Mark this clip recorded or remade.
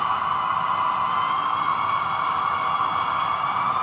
recorded